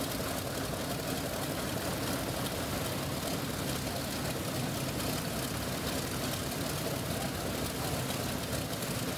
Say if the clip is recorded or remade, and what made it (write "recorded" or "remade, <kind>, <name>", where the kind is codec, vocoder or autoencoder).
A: recorded